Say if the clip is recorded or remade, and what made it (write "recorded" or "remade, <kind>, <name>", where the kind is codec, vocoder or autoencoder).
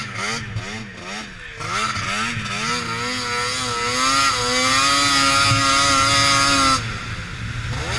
recorded